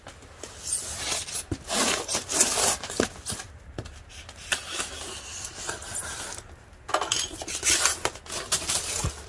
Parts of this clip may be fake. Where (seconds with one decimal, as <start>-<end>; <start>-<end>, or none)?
none